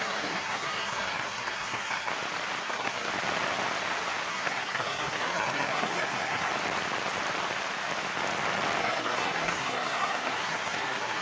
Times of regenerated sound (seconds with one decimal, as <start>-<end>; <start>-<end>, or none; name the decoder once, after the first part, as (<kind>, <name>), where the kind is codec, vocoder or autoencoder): 0.0-2.1 (codec, SNAC); 2.6-3.1; 4.3-6.5; 8.8-11.2